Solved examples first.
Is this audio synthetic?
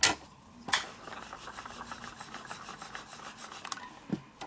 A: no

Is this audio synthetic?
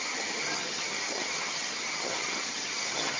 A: yes